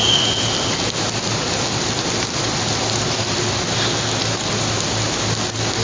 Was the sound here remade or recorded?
recorded